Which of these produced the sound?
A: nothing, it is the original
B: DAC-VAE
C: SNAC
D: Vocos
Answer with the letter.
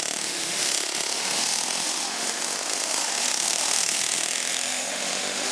B